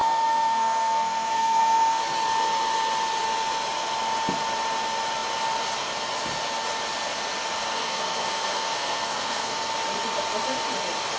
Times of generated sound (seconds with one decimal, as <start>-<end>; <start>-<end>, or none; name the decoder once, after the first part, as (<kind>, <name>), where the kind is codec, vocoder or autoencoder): 0.0-2.0 (codec, SNAC); 7.7-9.7